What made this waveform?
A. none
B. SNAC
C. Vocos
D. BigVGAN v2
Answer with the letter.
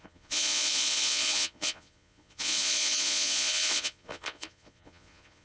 C